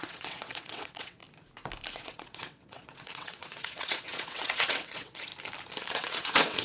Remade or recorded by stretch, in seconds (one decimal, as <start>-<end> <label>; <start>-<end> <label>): 0.0-1.2 remade; 1.2-2.0 recorded; 2.0-5.3 remade; 5.3-5.9 recorded; 5.9-6.6 remade